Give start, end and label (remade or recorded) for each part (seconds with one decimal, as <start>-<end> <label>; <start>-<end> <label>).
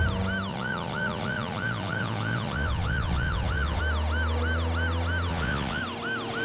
0.0-0.5 recorded; 0.5-3.8 remade; 3.8-5.3 recorded; 5.3-5.8 remade; 5.8-6.4 recorded